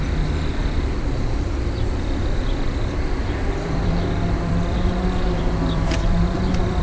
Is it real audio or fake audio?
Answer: fake